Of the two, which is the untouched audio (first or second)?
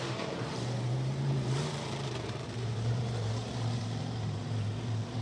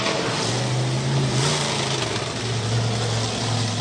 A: second